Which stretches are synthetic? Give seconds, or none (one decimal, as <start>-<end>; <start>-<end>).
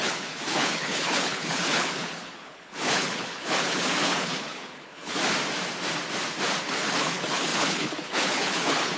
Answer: 0.0-5.2; 6.6-9.0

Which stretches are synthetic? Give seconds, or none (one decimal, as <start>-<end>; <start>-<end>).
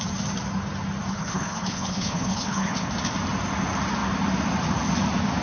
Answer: 1.1-2.9